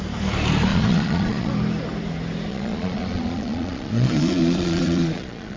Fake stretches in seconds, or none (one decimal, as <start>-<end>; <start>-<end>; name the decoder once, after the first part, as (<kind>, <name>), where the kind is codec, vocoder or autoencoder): 0.7-1.5 (vocoder, Vocos); 2.5-5.6